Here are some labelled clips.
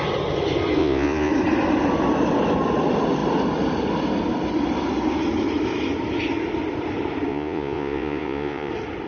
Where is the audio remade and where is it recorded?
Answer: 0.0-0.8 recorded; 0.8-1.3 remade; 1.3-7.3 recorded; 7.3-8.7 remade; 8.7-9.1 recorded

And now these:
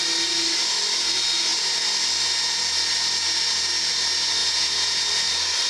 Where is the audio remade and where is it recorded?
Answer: 0.0-4.4 recorded; 4.4-5.0 remade; 5.0-5.7 recorded

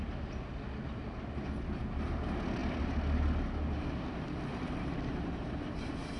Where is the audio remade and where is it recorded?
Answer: 0.0-6.2 recorded